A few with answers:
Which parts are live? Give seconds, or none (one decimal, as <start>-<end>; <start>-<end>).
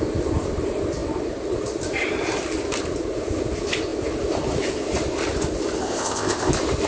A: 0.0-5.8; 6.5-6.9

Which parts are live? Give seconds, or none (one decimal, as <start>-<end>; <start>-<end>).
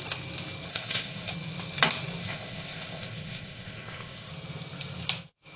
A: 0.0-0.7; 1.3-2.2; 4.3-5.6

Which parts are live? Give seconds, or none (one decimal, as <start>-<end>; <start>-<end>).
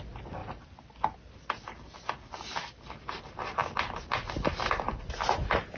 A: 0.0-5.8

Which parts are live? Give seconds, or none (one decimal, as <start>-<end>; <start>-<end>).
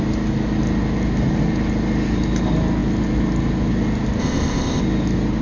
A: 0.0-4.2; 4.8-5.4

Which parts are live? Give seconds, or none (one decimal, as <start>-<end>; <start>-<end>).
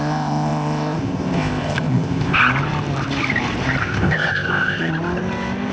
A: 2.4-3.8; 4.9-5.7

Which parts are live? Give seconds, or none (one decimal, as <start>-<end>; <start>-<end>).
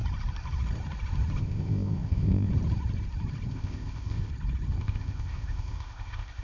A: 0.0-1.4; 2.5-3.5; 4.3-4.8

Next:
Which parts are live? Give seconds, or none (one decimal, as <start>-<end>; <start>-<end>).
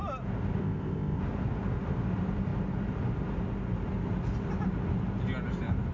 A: 0.0-0.6; 1.2-5.9